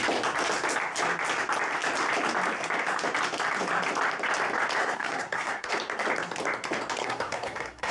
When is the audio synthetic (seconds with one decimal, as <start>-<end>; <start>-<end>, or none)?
4.8-5.7; 7.0-7.9

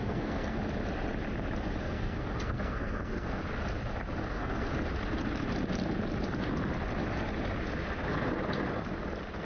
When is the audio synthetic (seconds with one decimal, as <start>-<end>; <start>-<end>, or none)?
0.0-0.6; 1.8-3.4; 4.3-4.7

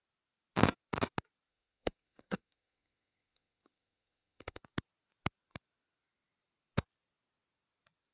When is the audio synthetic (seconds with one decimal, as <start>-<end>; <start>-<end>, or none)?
1.5-4.6